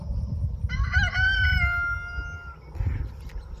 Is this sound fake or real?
real